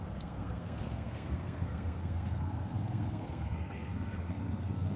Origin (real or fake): fake